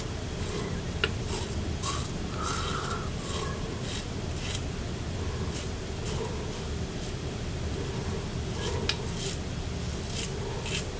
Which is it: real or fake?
real